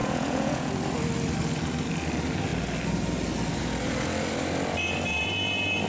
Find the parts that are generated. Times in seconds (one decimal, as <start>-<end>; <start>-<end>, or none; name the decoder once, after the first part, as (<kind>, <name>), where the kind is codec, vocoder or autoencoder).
0.0-0.7 (vocoder, Vocos)